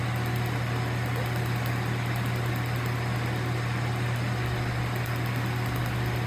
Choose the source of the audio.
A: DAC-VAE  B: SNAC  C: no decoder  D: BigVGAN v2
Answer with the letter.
C